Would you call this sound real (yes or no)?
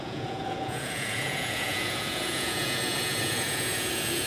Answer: no